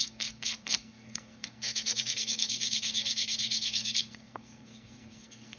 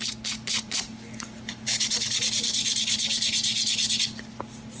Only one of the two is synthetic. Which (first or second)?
first